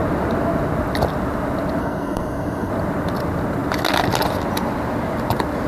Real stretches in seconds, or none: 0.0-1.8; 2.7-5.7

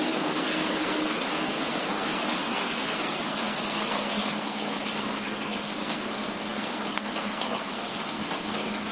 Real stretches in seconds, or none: none

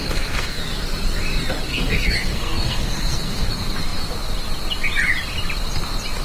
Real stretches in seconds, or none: 0.6-1.7; 3.5-6.2

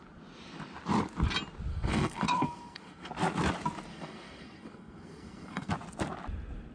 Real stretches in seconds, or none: 0.0-1.7; 3.1-3.9; 5.7-6.7

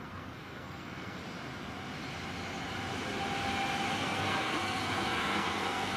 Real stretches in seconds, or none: 1.2-3.9